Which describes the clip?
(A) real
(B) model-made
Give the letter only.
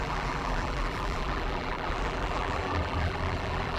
B